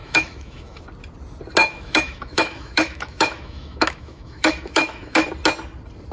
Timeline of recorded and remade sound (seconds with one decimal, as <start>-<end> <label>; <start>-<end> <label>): 0.0-0.8 remade; 0.8-1.6 recorded; 1.6-5.3 remade; 5.3-6.1 recorded